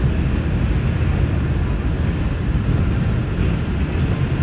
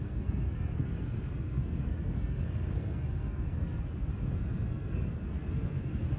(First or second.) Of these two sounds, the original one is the first